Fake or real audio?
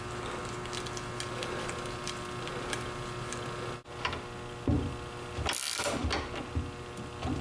real